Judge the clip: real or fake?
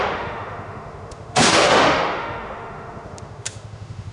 fake